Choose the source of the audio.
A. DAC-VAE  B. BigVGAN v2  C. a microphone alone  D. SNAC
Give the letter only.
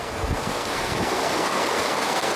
D